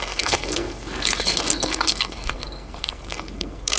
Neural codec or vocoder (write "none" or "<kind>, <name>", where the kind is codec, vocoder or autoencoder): codec, SNAC